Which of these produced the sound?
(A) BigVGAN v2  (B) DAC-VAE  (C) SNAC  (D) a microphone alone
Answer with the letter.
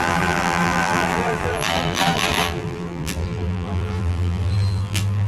A